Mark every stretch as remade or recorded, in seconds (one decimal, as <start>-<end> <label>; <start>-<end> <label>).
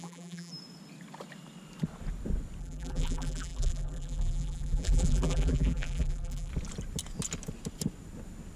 0.0-0.5 remade; 0.5-2.6 recorded; 2.6-6.5 remade; 6.5-8.6 recorded